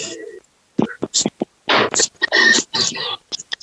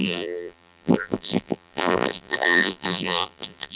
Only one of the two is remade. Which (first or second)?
second